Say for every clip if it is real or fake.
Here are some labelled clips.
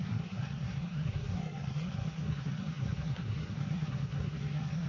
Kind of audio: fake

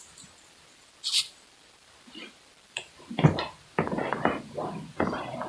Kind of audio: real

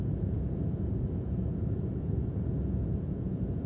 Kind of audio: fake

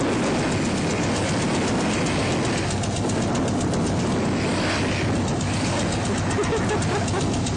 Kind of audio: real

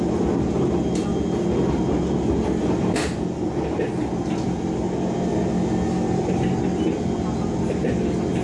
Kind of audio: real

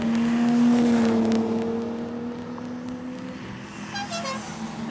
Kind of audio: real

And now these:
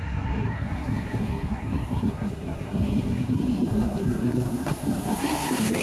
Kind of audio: fake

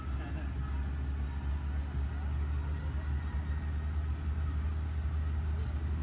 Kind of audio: real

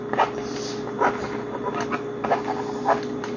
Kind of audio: real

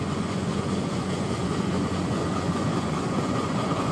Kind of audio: fake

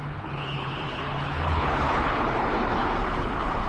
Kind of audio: fake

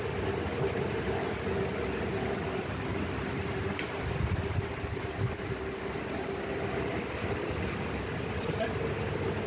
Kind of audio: real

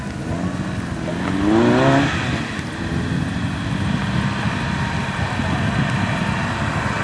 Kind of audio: real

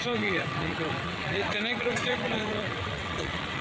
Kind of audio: fake